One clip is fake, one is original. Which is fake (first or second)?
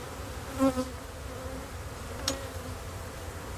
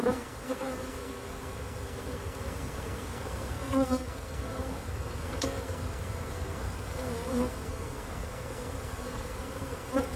second